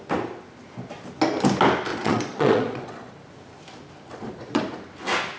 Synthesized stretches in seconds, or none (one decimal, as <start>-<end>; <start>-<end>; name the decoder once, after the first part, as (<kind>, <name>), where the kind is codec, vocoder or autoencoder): 1.9-3.1 (vocoder, Vocos); 4.1-4.6